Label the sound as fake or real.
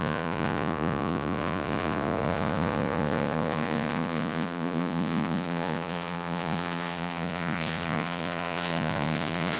fake